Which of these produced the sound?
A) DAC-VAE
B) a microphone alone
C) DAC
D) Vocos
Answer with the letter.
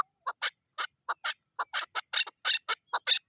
B